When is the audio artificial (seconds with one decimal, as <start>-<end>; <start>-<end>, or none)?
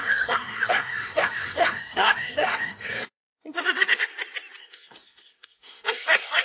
0.0-4.1; 4.6-6.4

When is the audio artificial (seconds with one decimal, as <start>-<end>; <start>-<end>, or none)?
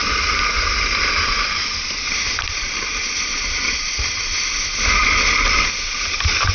none